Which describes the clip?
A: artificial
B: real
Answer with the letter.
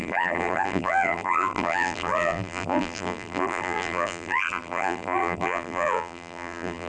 A